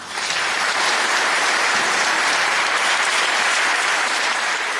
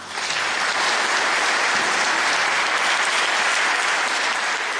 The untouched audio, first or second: second